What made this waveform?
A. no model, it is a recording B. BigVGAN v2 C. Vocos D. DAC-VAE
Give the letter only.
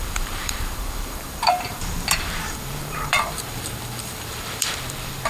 B